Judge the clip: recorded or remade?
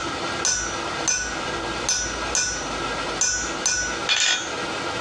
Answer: recorded